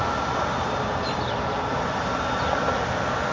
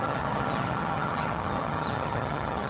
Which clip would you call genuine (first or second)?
first